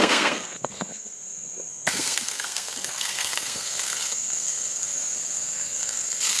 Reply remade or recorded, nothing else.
remade